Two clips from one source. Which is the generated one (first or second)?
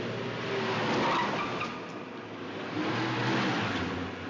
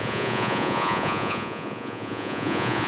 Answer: second